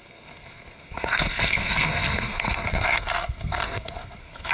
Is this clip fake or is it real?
fake